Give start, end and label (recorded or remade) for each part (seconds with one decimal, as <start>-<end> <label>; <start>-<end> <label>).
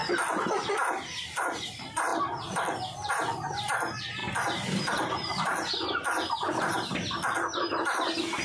0.0-8.4 remade